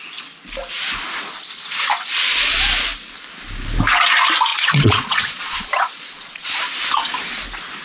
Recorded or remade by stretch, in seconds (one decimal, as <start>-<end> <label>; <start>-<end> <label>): 0.0-4.5 recorded; 4.5-6.5 remade; 6.5-7.8 recorded